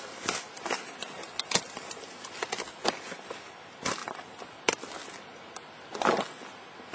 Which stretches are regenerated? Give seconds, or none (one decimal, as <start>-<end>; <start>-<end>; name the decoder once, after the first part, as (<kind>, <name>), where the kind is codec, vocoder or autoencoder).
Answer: none